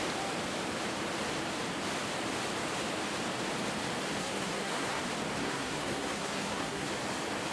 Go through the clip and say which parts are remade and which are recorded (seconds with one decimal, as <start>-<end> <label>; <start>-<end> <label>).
0.0-4.2 recorded; 4.2-5.0 remade; 5.0-5.4 recorded; 5.4-6.9 remade; 6.9-7.5 recorded